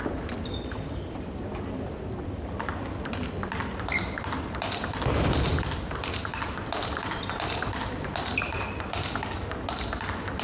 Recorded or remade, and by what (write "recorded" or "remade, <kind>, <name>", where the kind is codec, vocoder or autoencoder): remade, vocoder, BigVGAN v2